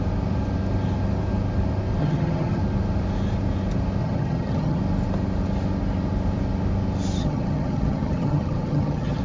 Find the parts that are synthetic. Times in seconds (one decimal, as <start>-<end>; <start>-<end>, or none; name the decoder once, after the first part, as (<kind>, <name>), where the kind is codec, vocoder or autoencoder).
2.0-2.6 (vocoder, HiFi-GAN); 4.0-4.8; 7.2-9.2